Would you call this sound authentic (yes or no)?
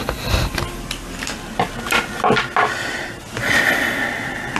yes